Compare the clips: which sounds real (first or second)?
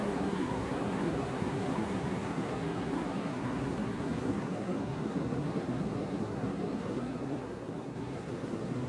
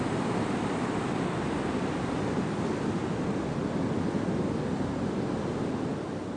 second